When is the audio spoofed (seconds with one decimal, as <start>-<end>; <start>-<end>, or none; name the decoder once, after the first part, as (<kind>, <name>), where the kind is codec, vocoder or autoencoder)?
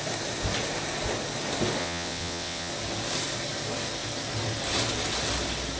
1.8-2.7 (vocoder, WaveNeXt)